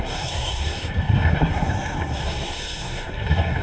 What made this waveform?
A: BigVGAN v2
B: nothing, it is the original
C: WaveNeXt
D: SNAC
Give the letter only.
D